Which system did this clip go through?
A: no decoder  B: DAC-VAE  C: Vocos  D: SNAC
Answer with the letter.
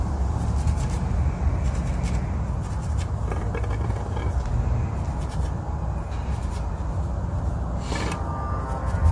A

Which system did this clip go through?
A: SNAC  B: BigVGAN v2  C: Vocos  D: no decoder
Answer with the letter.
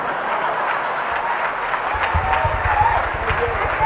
D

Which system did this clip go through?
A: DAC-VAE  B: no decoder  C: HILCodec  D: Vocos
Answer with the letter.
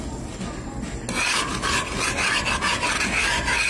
B